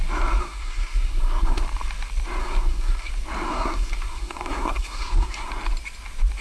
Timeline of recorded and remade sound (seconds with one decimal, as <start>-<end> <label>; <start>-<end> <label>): 0.0-0.4 recorded; 0.4-1.6 remade; 1.6-2.4 recorded; 2.4-3.1 remade; 3.1-3.5 recorded; 3.5-5.5 remade; 5.5-6.4 recorded